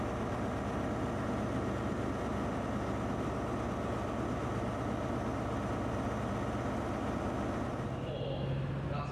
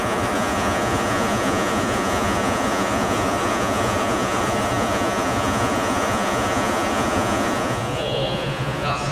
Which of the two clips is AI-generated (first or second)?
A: second